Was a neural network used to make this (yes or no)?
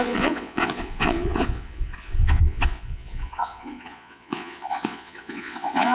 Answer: yes